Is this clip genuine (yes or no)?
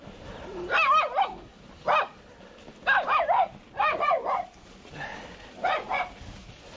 yes